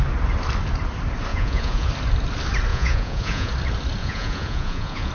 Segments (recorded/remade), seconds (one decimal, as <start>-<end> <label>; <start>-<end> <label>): 0.0-1.3 recorded; 1.3-1.9 remade; 1.9-2.7 recorded; 2.7-3.5 remade; 3.5-4.0 recorded; 4.0-5.1 remade